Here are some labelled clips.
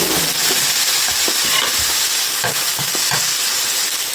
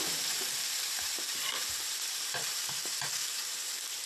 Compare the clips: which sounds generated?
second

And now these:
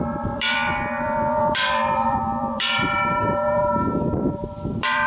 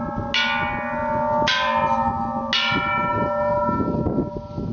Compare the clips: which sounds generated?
first